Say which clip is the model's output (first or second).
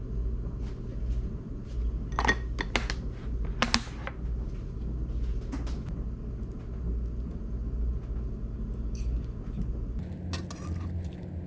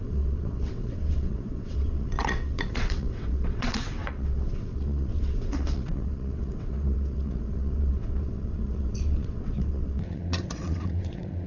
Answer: second